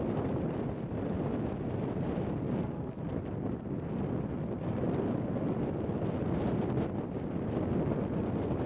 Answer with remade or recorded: recorded